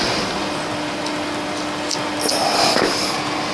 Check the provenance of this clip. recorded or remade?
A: recorded